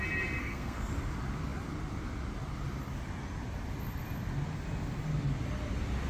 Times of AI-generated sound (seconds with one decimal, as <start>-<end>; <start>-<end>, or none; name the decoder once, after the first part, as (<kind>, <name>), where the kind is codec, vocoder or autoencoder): 0.4-0.9 (codec, SNAC)